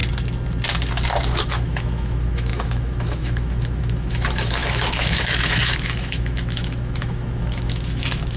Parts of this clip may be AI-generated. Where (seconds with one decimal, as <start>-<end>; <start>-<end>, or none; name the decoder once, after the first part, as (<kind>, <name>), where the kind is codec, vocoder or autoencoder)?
1.3-8.4 (autoencoder, DAC-VAE)